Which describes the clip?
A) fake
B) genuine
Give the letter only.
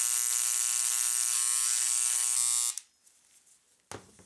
B